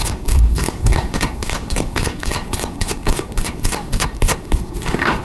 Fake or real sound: fake